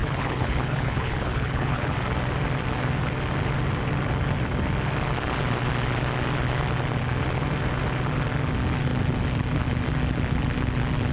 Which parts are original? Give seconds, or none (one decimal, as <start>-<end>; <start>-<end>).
1.9-11.1

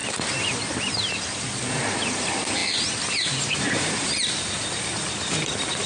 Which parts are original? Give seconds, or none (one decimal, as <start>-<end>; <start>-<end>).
0.0-5.9

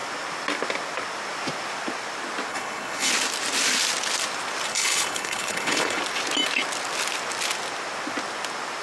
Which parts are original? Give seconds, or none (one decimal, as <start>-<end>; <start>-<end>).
0.0-2.5; 3.1-4.7; 6.0-8.8

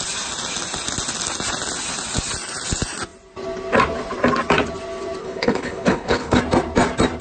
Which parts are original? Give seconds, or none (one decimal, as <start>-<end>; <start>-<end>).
0.0-5.2; 6.4-7.2

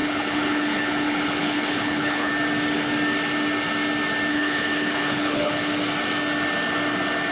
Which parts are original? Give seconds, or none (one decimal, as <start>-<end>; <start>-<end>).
2.3-4.3; 5.7-7.3

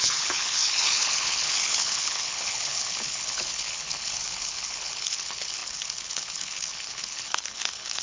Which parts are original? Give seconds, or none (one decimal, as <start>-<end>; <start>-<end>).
none

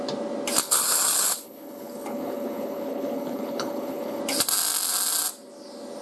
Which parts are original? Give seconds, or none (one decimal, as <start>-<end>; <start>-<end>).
0.0-0.6; 4.2-6.0

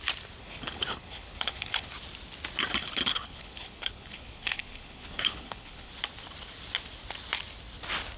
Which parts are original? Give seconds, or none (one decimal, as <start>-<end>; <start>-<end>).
0.0-0.4; 1.9-2.8; 5.9-8.2